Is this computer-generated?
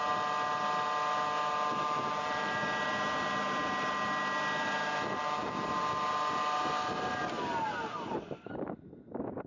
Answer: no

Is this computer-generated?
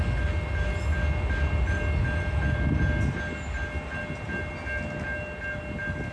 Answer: no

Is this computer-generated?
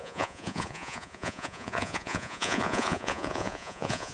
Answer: yes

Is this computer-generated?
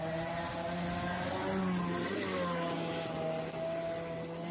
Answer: no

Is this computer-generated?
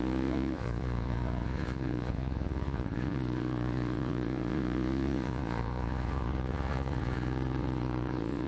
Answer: yes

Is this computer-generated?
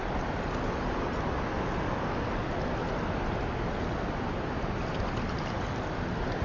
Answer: no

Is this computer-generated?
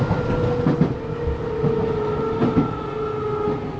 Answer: no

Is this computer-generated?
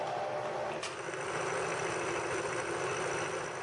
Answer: no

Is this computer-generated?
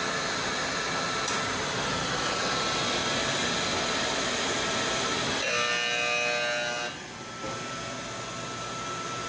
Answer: no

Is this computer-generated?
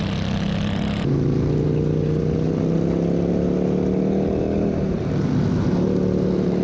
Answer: no